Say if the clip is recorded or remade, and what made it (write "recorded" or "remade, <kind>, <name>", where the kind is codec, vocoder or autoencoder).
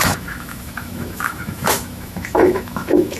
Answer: remade, autoencoder, DAC-VAE